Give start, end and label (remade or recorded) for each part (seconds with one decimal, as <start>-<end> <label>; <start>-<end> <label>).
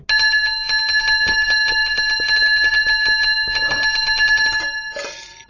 0.0-5.5 recorded